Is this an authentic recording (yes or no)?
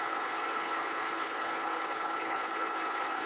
no